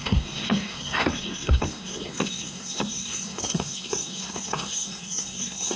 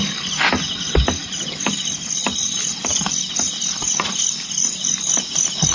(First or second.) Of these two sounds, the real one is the second